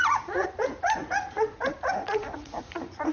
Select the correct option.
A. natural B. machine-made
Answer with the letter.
B